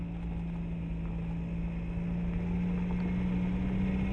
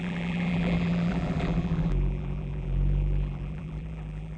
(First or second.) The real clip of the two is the first